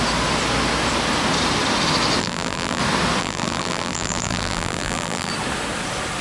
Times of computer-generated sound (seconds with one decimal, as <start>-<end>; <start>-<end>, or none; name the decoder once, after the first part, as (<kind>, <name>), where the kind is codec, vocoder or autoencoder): 2.2-2.8 (vocoder, BigVGAN v2); 3.2-5.3